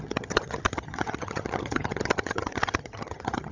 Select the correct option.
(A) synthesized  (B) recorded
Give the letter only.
A